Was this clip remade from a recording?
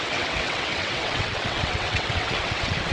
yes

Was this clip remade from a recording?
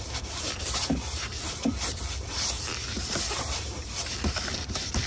yes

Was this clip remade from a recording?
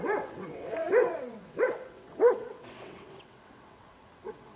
yes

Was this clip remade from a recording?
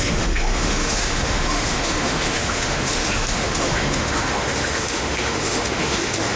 yes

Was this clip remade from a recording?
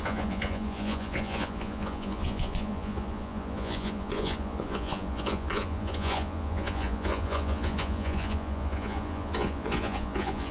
yes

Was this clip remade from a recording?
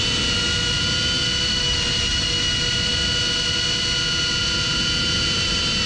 no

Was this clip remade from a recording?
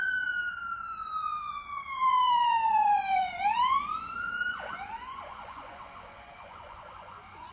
yes